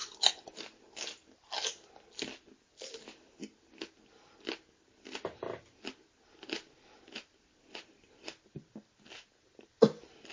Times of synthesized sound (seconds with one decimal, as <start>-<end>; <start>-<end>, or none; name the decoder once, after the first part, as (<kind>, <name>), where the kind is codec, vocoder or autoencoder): none